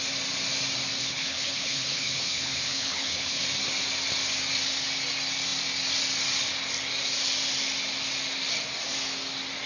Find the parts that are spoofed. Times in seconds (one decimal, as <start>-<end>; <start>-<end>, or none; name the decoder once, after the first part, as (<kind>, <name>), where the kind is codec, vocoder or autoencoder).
1.0-3.4 (codec, HILCodec)